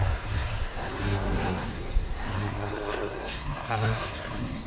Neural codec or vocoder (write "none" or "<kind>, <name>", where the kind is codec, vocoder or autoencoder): codec, SNAC